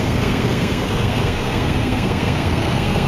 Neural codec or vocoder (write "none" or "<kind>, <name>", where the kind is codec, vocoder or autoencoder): codec, SNAC